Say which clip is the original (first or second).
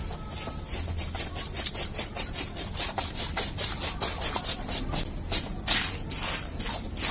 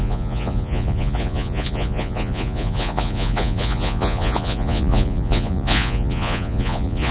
first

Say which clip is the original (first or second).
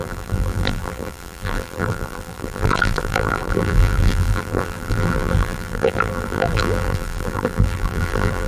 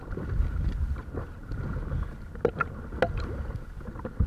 second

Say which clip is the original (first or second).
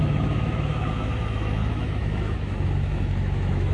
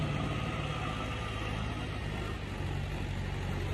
second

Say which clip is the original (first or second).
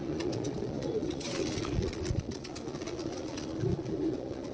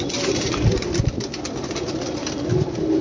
second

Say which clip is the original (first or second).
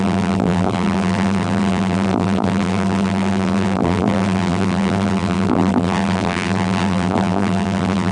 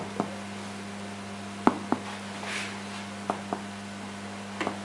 second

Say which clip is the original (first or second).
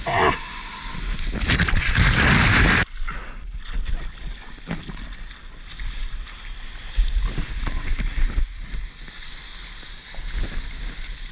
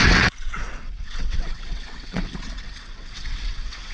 first